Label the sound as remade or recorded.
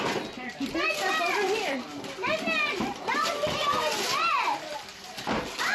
recorded